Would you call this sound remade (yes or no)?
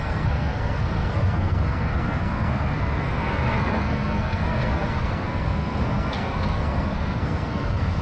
yes